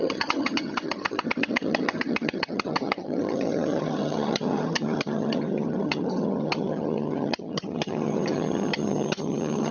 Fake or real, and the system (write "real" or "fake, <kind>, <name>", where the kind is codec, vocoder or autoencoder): fake, vocoder, HiFi-GAN